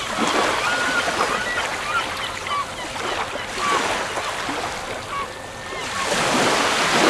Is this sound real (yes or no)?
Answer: yes